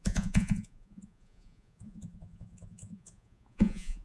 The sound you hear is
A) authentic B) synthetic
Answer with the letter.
B